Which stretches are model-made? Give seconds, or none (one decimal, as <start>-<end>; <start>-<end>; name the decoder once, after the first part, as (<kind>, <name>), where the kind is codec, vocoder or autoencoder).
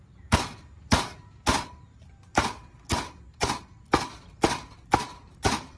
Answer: 0.0-2.6 (vocoder, BigVGAN v2); 5.0-5.8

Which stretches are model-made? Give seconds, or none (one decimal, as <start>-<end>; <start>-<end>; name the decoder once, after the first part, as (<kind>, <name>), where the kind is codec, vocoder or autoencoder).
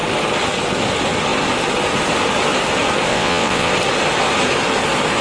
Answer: 3.1-3.7 (vocoder, WaveNeXt)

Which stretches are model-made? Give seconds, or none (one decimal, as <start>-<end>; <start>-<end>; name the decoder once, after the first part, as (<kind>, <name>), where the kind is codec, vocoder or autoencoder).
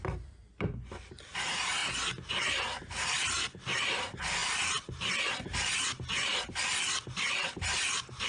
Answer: 0.0-1.8 (vocoder, BigVGAN v2); 3.7-8.3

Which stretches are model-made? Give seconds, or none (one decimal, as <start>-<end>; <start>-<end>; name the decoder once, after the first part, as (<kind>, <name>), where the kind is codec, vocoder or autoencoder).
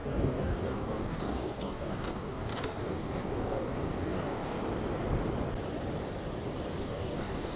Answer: 0.0-4.6 (codec, DAC); 6.8-7.6